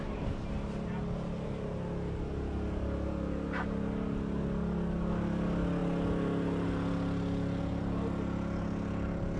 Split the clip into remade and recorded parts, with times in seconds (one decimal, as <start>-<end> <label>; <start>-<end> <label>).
0.0-9.4 recorded